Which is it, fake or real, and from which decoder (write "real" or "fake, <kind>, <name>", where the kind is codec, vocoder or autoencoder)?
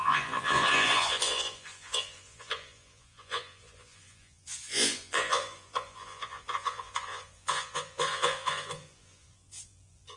fake, vocoder, Vocos